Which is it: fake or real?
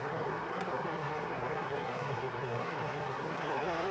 fake